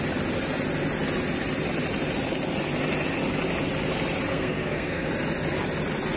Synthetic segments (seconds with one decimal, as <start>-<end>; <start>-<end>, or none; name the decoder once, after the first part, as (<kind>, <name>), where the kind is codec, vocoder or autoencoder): 4.3-5.1 (codec, SNAC)